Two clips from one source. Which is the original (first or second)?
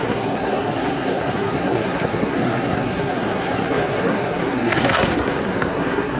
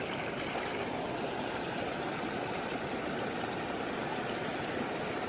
second